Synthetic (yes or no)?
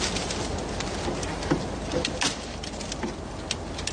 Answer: no